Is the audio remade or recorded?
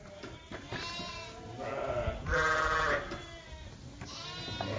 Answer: recorded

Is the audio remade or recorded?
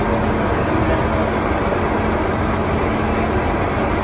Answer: recorded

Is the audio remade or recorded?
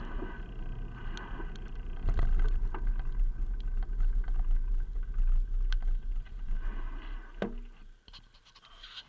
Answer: recorded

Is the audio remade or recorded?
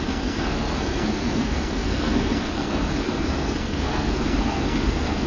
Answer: remade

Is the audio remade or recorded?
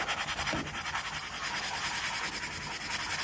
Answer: recorded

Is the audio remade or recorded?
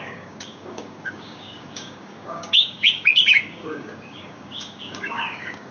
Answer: remade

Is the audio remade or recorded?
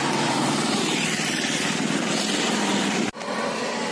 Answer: remade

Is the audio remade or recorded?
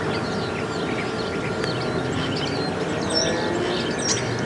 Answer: recorded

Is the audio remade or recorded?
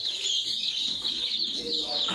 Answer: remade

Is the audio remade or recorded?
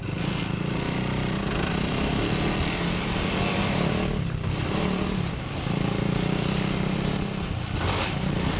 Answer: recorded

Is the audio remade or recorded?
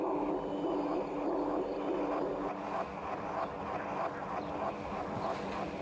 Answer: recorded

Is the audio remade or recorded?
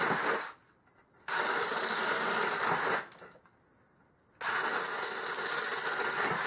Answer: recorded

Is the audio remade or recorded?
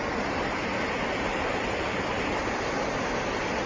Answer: recorded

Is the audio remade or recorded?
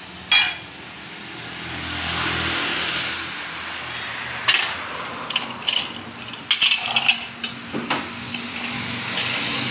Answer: recorded